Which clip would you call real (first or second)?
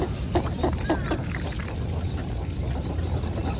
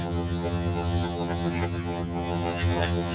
first